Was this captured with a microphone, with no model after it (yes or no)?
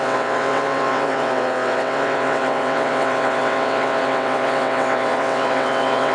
no